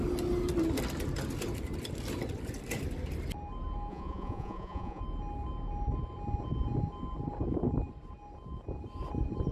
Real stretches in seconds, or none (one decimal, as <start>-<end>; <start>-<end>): 0.0-3.9; 5.0-9.5